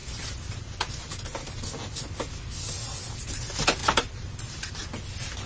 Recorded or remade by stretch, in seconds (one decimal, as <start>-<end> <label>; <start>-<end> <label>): 0.0-3.8 recorded; 3.8-4.4 remade; 4.4-5.5 recorded